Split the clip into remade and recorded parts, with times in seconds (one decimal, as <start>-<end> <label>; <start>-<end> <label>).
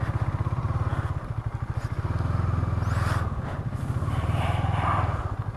0.0-5.6 recorded